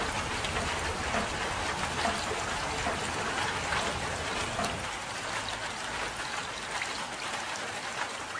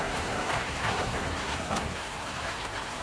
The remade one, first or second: second